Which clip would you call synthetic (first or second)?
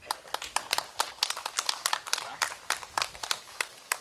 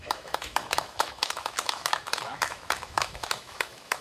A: second